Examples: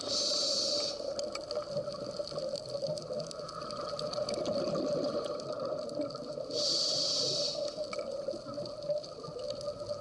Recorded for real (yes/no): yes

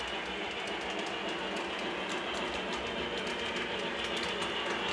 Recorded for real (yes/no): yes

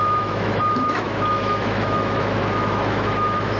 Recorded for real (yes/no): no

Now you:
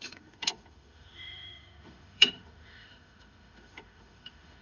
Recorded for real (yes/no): no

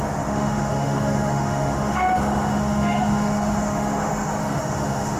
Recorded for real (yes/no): no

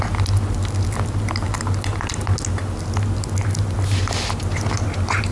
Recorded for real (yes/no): yes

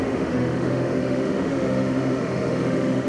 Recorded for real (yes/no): no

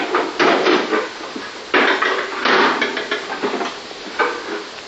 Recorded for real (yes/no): yes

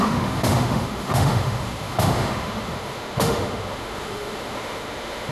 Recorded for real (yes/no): no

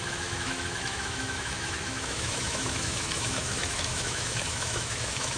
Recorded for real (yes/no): no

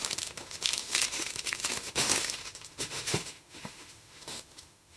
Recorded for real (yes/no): no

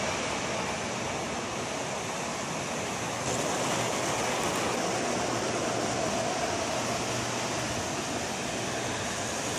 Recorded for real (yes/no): yes